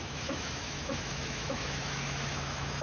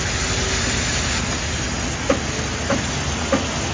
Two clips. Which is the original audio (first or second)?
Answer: second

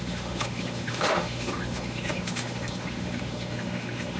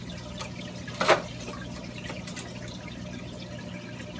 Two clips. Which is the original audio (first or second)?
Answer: second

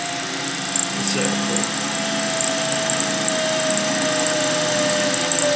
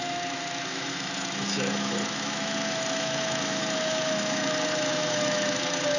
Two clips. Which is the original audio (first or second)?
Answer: first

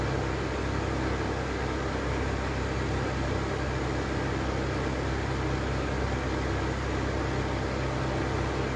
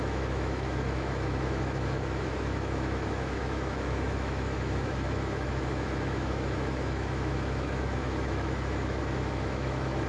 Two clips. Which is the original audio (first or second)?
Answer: first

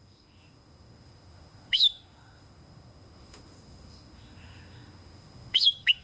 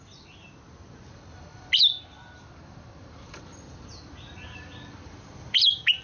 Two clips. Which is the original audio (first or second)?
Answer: second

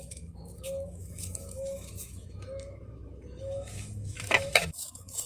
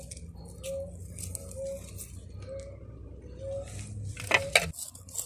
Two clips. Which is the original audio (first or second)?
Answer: second